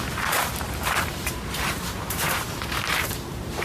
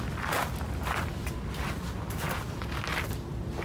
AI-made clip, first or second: first